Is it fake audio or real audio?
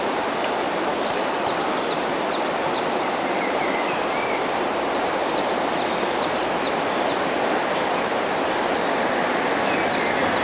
fake